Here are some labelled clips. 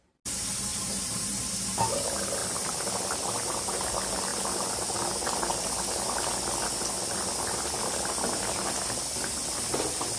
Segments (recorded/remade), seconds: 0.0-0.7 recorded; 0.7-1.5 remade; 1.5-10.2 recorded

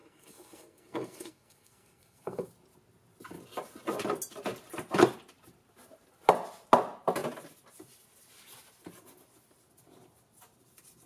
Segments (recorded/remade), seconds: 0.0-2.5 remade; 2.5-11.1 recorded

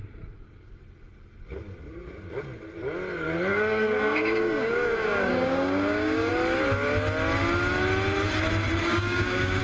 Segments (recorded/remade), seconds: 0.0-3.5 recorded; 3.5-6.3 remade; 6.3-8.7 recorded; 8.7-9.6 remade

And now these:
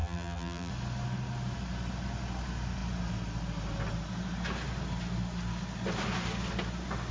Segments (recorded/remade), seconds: 0.0-0.7 remade; 0.7-7.1 recorded

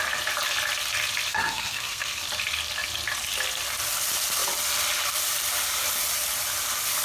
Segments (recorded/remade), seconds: 0.0-1.3 recorded; 1.3-2.2 remade; 2.2-7.0 recorded

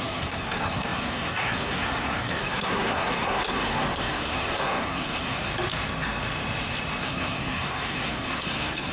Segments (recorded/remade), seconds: 0.0-5.5 remade; 5.5-7.0 recorded; 7.0-8.9 remade

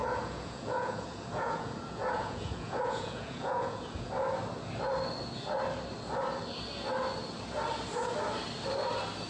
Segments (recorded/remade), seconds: 0.0-4.1 remade; 4.1-9.3 recorded

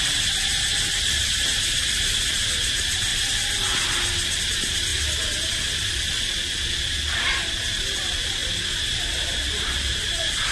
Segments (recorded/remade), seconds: 0.0-3.1 remade; 3.1-4.4 recorded; 4.4-4.9 remade; 4.9-7.8 recorded; 7.8-8.4 remade; 8.4-9.0 recorded; 9.0-10.5 remade